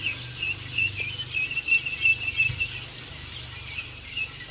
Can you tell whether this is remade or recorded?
recorded